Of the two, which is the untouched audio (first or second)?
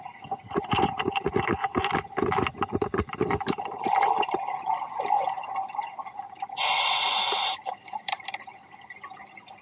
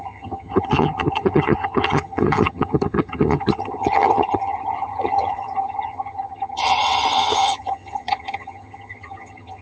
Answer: first